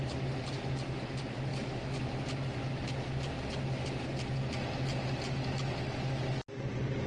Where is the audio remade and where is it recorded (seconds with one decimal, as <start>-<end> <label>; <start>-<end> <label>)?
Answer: 0.0-1.5 recorded; 1.5-2.0 remade; 2.0-7.1 recorded